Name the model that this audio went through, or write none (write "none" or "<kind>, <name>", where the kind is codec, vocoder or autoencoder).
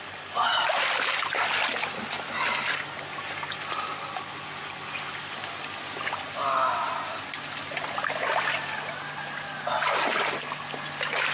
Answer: none